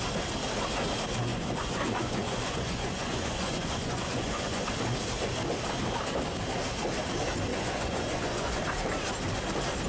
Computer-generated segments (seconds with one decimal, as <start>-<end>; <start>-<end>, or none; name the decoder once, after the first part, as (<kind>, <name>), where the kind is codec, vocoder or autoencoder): 1.3-4.7 (vocoder, Vocos); 7.5-8.6